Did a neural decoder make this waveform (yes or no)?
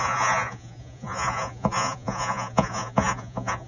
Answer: yes